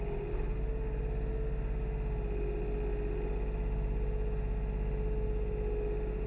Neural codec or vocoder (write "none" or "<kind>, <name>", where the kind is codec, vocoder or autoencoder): none